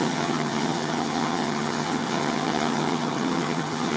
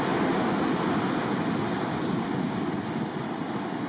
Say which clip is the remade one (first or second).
first